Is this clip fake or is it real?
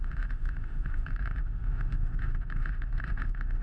fake